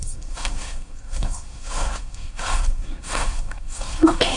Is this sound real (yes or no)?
no